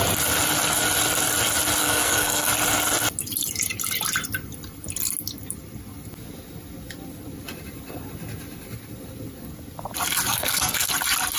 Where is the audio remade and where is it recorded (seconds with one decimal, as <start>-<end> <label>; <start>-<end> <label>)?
0.0-1.8 recorded; 1.8-2.5 remade; 2.5-10.3 recorded; 10.3-10.9 remade; 10.9-11.4 recorded